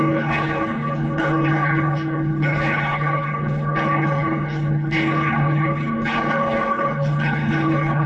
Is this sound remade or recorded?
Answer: remade